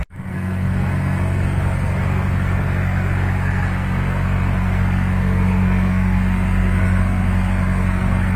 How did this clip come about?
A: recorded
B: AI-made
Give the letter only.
B